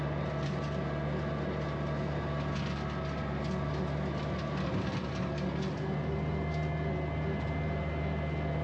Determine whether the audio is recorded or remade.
recorded